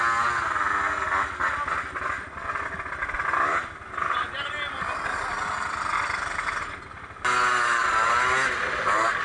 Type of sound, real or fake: real